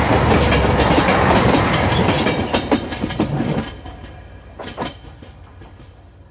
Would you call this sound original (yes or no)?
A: yes